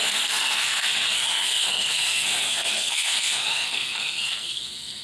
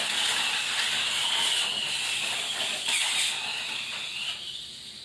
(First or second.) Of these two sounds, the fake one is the first